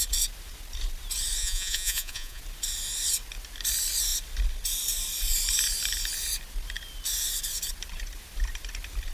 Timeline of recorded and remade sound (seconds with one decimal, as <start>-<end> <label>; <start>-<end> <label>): 0.0-1.4 recorded; 1.4-2.4 remade; 2.4-9.1 recorded